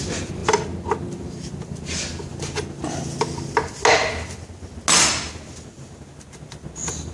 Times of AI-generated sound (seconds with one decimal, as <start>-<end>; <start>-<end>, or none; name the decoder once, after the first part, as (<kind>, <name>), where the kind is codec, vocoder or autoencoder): none